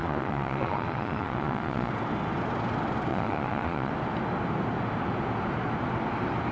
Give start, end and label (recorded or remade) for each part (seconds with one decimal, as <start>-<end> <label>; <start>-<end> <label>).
0.0-1.9 remade; 1.9-3.1 recorded; 3.1-3.9 remade; 3.9-6.5 recorded